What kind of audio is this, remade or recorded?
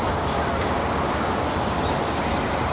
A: recorded